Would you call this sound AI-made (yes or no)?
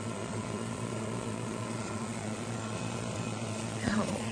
yes